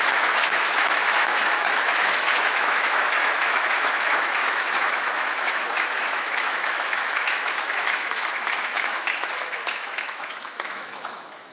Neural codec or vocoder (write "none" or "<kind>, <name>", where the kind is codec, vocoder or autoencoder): autoencoder, DAC-VAE